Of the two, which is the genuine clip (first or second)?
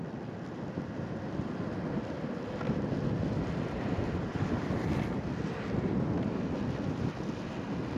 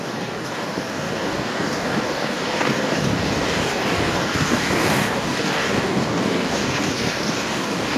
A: first